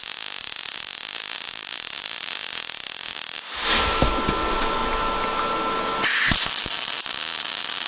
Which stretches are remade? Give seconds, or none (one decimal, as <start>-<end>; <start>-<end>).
2.5-3.4